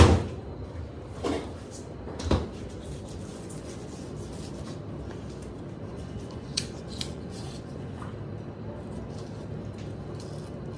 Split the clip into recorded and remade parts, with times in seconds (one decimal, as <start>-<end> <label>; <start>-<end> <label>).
0.0-3.3 recorded; 3.3-4.1 remade; 4.1-5.9 recorded; 5.9-8.1 remade; 8.1-10.8 recorded